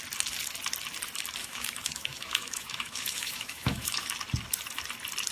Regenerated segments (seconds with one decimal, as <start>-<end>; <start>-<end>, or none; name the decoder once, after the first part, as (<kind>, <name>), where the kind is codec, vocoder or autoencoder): 1.4-4.1 (autoencoder, DAC-VAE)